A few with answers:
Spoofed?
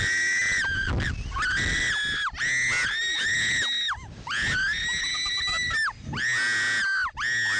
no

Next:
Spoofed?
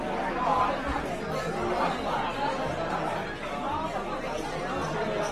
no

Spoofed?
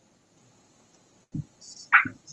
no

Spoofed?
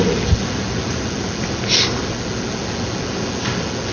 no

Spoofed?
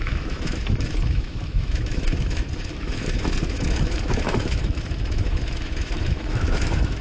yes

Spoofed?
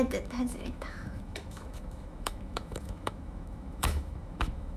yes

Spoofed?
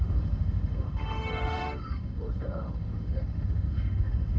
yes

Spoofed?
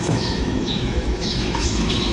yes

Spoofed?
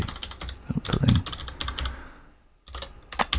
no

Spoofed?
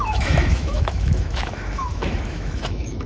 yes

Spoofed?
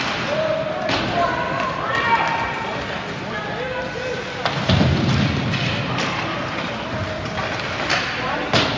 no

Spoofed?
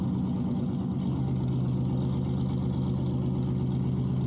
no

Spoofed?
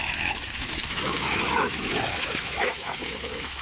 yes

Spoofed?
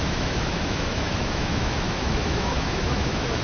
yes